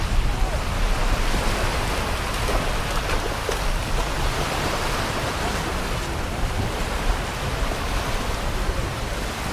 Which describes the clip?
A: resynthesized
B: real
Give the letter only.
B